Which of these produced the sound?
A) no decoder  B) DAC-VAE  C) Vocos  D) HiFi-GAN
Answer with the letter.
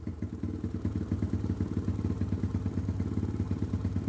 A